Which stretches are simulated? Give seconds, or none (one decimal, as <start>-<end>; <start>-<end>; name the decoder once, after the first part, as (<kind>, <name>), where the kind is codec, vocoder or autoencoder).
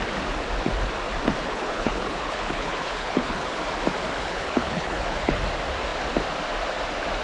1.4-3.6 (codec, HILCodec); 4.2-5.4